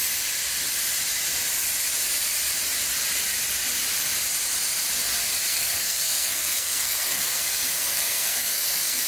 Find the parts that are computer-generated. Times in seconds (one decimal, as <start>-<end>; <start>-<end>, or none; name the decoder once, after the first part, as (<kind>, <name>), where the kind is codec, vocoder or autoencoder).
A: 5.5-9.1 (codec, SNAC)